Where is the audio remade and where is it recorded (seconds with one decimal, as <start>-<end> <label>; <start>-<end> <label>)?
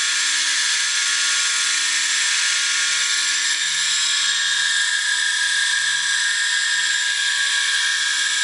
0.0-8.4 recorded